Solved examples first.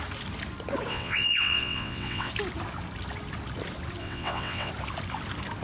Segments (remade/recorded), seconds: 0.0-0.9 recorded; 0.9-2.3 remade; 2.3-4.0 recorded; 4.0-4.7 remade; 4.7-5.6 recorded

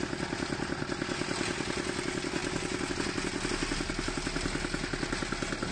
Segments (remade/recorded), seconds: 0.0-5.7 recorded

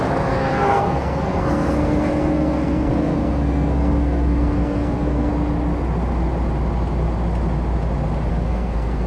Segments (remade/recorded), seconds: 0.0-5.3 remade; 5.3-8.3 recorded; 8.3-9.1 remade

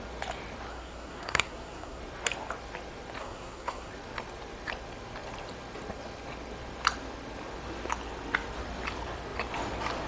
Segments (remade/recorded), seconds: 0.0-0.7 recorded; 0.7-2.0 remade; 2.0-3.2 recorded; 3.2-3.9 remade; 3.9-10.1 recorded

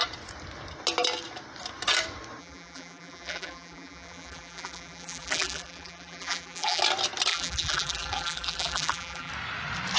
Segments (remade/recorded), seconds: 0.0-2.4 recorded; 2.4-6.8 remade; 6.8-7.3 recorded; 7.3-9.3 remade; 9.3-10.0 recorded